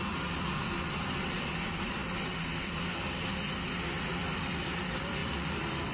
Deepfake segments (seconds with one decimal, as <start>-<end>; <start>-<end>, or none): 0.0-2.0; 2.6-3.0; 4.2-5.9